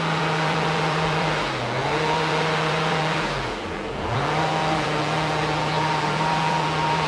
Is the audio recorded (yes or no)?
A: no